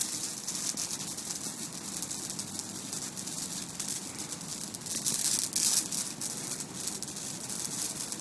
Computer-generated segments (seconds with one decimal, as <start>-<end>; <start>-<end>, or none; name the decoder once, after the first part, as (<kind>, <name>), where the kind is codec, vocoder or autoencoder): none